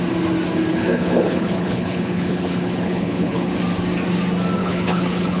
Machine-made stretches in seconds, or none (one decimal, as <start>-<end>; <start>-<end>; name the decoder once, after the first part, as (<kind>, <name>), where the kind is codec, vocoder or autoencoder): 0.7-3.5 (codec, HILCodec); 4.6-5.4